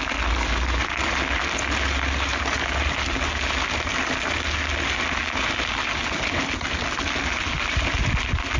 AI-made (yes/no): no